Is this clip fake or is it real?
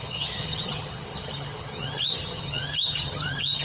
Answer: fake